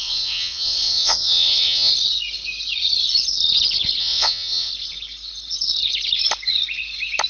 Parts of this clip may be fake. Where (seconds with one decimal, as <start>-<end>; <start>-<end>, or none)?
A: 0.0-1.9; 4.0-4.7